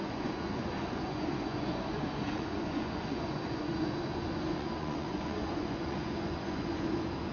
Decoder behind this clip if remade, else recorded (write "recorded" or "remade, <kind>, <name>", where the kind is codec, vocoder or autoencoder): remade, vocoder, Vocos